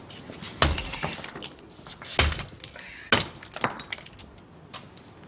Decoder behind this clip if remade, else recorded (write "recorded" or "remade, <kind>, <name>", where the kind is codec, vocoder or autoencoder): recorded